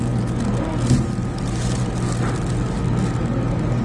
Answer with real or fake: real